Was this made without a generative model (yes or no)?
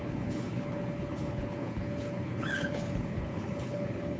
no